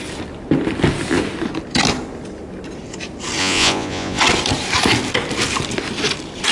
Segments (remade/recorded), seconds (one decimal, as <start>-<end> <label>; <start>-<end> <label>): 0.0-3.4 recorded; 3.4-4.2 remade; 4.2-6.5 recorded